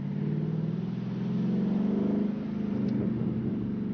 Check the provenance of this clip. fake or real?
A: real